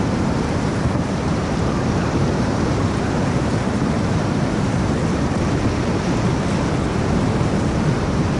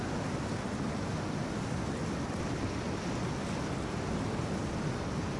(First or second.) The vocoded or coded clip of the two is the first